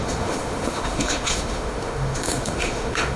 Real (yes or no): no